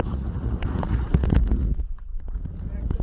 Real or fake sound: fake